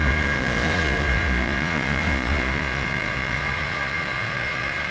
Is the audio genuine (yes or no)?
no